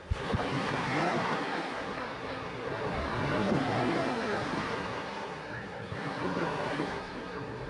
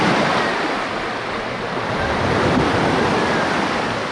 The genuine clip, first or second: second